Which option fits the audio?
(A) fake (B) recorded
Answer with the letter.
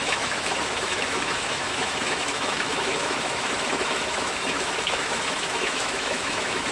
A